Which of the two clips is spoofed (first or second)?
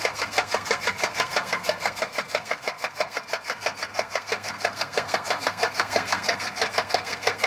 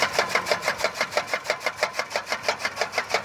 first